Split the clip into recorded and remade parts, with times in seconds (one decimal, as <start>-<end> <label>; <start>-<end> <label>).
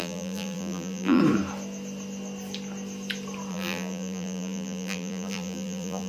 0.0-1.2 remade; 1.2-3.5 recorded; 3.5-6.1 remade